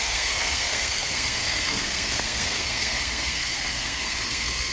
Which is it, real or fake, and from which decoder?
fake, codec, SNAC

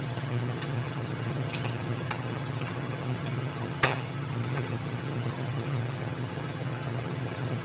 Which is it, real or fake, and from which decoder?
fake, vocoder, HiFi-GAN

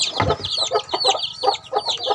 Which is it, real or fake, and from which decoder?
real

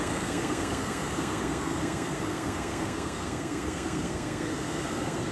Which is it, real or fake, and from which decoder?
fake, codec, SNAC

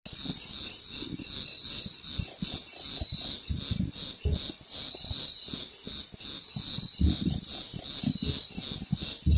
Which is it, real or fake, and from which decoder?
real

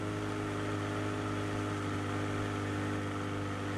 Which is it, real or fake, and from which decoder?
real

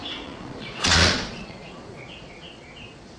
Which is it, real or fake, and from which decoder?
fake, vocoder, Vocos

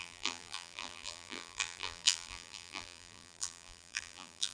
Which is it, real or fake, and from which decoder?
fake, vocoder, BigVGAN v2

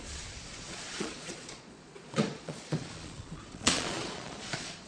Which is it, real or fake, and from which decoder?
fake, vocoder, Vocos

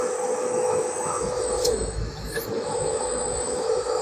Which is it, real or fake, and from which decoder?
fake, autoencoder, DAC-VAE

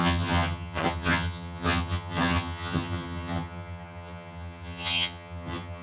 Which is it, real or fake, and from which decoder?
fake, vocoder, HiFi-GAN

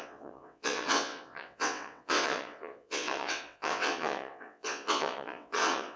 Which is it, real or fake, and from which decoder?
fake, vocoder, WaveNeXt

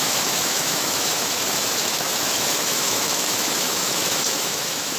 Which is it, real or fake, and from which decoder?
fake, autoencoder, DAC-VAE